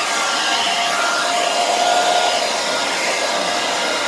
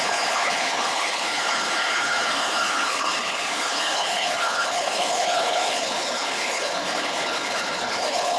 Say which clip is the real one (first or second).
first